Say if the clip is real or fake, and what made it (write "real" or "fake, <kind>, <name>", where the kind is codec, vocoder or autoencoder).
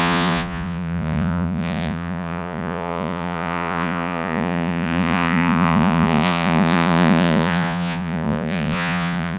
fake, vocoder, Vocos